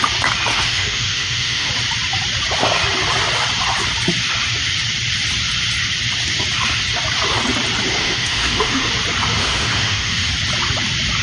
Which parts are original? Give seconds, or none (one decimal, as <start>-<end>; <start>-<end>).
0.0-0.5; 1.7-8.0; 8.9-9.4; 10.3-11.2